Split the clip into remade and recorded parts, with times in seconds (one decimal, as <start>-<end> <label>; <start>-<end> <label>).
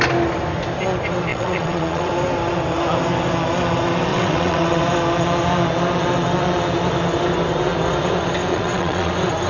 0.0-1.3 recorded; 1.3-2.1 remade; 2.1-4.1 recorded; 4.1-4.8 remade; 4.8-8.5 recorded; 8.5-9.1 remade; 9.1-9.5 recorded